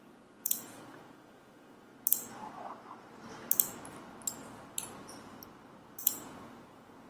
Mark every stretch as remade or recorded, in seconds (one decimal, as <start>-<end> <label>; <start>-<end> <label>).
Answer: 0.0-1.9 remade; 1.9-6.0 recorded; 6.0-7.1 remade